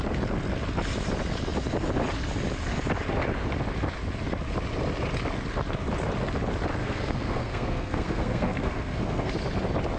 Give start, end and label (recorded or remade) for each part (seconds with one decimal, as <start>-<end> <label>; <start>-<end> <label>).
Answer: 0.0-6.8 recorded; 6.8-9.3 remade; 9.3-10.0 recorded